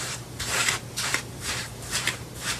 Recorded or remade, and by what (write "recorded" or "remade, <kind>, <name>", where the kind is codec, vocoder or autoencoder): remade, vocoder, BigVGAN v2